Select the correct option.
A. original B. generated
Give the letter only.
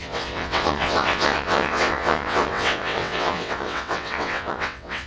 B